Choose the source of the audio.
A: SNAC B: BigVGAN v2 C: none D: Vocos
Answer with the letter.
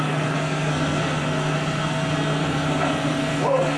A